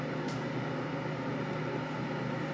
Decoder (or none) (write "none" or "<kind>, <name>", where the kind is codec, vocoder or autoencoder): none